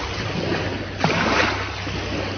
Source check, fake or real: real